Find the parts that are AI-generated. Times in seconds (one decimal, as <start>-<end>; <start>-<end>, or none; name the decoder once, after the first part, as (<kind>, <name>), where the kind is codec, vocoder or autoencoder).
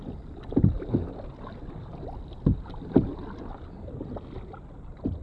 none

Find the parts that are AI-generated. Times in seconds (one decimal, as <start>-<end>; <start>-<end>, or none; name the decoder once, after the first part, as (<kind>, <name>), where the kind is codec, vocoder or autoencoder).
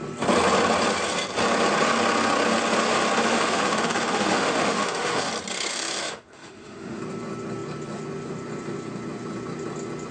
3.3-5.3 (autoencoder, DAC-VAE); 5.7-7.0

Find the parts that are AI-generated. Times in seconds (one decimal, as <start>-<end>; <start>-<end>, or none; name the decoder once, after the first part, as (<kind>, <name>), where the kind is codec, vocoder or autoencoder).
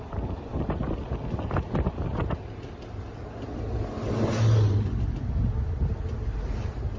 none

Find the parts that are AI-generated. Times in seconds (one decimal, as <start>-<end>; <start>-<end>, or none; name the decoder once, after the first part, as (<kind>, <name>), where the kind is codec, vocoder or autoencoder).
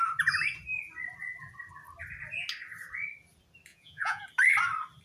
3.7-4.2 (vocoder, Vocos)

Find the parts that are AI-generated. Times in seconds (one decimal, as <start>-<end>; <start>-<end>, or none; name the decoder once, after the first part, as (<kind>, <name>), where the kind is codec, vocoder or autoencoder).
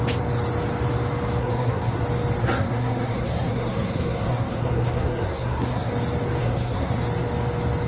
1.4-2.0 (codec, SNAC); 2.4-5.9; 6.4-7.0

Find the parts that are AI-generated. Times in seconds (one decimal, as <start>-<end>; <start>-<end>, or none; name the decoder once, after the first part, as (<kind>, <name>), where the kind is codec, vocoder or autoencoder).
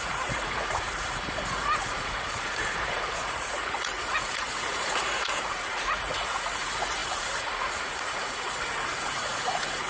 0.0-9.9 (vocoder, Vocos)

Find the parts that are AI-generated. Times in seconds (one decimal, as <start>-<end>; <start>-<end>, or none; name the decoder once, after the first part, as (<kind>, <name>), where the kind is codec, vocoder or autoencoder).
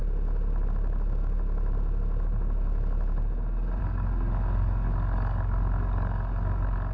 3.8-6.9 (codec, DAC)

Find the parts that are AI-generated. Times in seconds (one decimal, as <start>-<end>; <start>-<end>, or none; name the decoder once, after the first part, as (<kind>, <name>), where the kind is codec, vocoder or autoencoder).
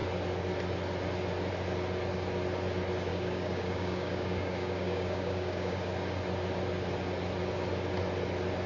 3.1-5.9 (codec, DAC)